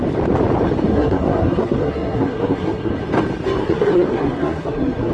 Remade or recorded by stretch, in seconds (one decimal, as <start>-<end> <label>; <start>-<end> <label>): 0.0-0.9 recorded; 0.9-2.9 remade; 2.9-3.6 recorded; 3.6-5.1 remade